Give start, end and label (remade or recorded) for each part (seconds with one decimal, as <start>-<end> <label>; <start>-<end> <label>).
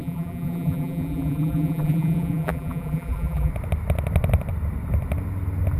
0.0-3.5 remade; 3.5-5.8 recorded